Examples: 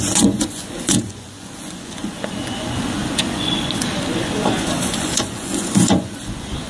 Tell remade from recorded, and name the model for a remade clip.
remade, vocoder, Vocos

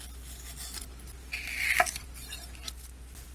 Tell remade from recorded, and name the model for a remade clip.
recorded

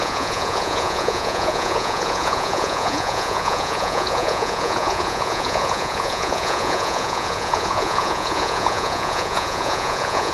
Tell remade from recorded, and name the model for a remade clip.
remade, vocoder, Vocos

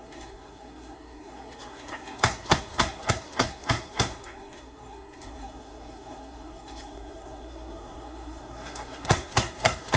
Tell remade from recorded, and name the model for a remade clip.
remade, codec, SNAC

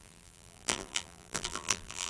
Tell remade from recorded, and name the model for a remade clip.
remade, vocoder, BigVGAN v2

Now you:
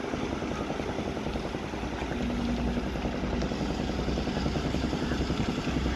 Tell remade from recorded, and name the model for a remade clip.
recorded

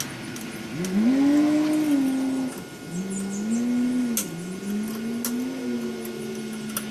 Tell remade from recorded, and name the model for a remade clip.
recorded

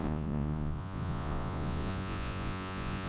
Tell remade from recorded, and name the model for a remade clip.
remade, vocoder, Vocos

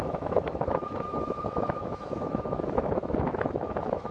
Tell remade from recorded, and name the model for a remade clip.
remade, autoencoder, DAC-VAE